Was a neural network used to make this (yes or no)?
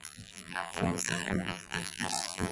yes